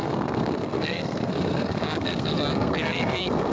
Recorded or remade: remade